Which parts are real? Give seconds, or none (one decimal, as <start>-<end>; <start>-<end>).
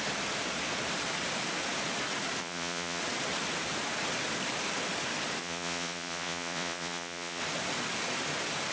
0.0-2.4; 3.0-5.4; 7.4-8.7